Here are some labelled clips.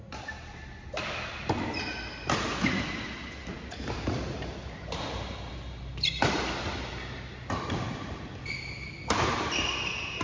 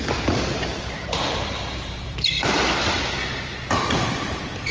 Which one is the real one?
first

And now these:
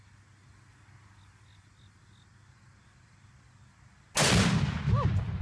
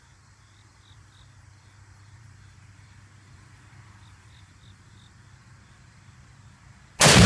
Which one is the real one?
first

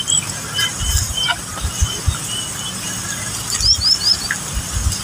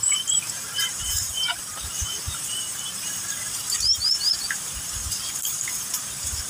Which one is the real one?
first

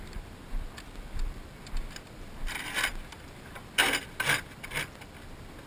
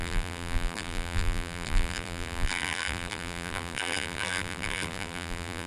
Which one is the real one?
first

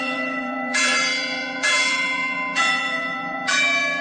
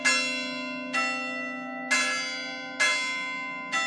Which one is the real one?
second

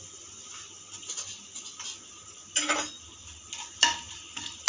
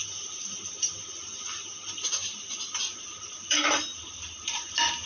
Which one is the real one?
first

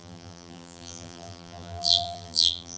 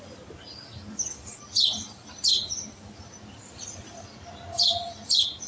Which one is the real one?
second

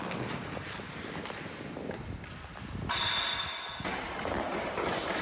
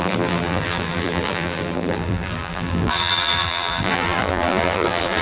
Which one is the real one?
first